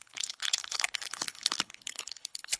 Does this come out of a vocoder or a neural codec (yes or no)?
yes